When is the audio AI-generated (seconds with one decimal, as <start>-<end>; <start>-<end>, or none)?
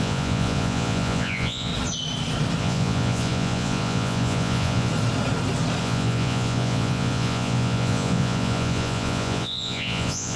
0.0-1.7; 2.6-4.9; 5.8-10.4